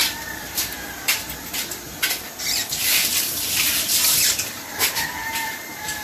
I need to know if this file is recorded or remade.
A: remade